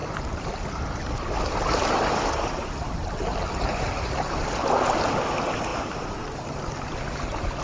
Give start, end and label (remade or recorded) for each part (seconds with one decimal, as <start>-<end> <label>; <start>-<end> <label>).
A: 0.0-7.6 recorded